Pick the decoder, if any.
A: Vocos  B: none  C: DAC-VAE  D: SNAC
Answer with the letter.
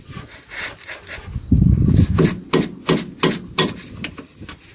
B